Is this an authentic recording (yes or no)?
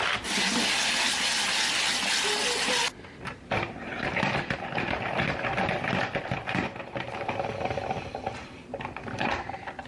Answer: yes